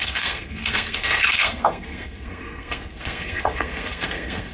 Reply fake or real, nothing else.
fake